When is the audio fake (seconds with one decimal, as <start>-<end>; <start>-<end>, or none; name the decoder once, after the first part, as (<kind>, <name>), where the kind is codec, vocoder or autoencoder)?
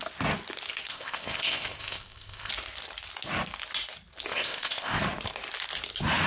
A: 0.9-2.5 (codec, ZipCodec); 4.3-5.0